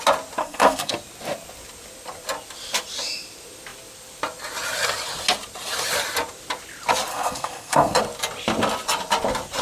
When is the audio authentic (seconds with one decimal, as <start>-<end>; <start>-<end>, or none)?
0.0-0.4; 0.9-7.1; 8.0-9.6